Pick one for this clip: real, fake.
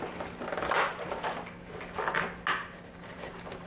real